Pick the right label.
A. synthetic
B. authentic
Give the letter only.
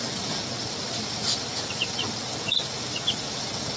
B